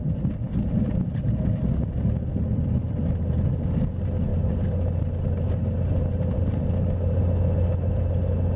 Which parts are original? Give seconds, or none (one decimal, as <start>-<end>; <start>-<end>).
0.0-2.5; 3.9-8.6